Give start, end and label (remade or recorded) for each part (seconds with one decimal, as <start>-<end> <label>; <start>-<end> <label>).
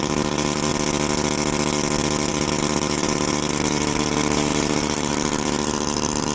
0.0-0.7 remade; 0.7-2.3 recorded; 2.3-6.3 remade